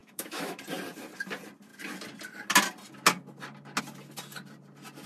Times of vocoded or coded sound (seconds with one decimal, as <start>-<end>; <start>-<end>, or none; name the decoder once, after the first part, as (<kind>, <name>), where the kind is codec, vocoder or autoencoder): 0.0-0.6 (autoencoder, DAC-VAE)